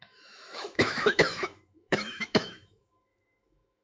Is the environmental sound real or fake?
fake